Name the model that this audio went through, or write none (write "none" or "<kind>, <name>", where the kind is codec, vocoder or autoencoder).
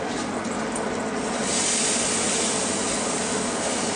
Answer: none